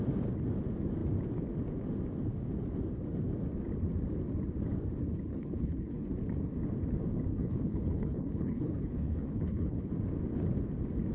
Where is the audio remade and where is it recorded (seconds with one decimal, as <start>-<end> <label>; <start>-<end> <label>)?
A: 0.0-5.3 recorded; 5.3-6.1 remade; 6.1-7.3 recorded; 7.3-9.9 remade; 9.9-11.1 recorded